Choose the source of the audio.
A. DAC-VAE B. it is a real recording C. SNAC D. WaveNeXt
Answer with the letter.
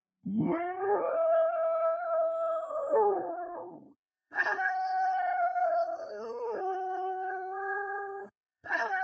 C